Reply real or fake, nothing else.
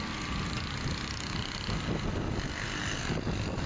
real